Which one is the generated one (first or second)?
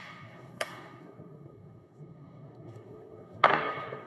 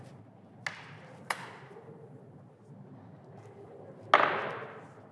first